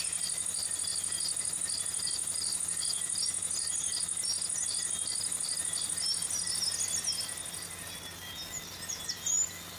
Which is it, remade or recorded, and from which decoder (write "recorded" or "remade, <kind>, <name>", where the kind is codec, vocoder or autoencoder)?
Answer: recorded